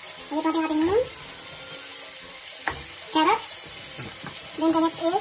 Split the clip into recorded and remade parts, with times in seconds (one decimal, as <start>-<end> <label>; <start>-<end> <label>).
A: 0.0-5.2 recorded